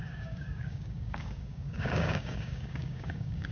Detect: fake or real fake